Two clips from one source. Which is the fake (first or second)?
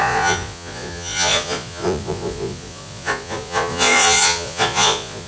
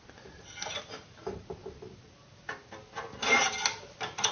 first